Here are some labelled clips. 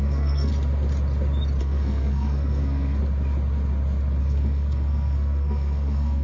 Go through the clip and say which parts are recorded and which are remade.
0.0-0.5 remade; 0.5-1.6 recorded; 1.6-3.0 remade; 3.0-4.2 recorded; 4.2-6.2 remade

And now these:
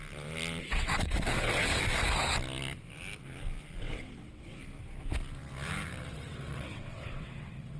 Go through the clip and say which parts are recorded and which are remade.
0.0-0.6 recorded; 0.6-1.7 remade; 1.7-3.8 recorded; 3.8-4.6 remade; 4.6-6.1 recorded; 6.1-7.8 remade

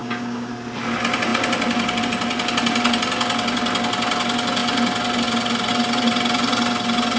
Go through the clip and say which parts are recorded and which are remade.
0.0-0.5 remade; 0.5-7.2 recorded

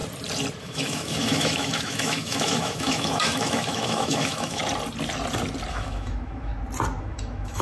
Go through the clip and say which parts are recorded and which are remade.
0.0-0.6 recorded; 0.6-4.6 remade; 4.6-5.7 recorded; 5.7-6.5 remade; 6.5-7.0 recorded; 7.0-7.6 remade

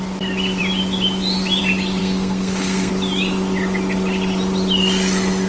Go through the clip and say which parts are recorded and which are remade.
0.0-2.0 recorded; 2.0-2.9 remade; 2.9-5.5 recorded

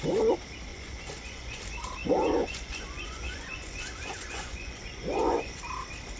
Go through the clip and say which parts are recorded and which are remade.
0.0-0.7 recorded; 0.7-1.6 remade; 1.6-2.0 recorded; 2.0-5.6 remade; 5.6-6.2 recorded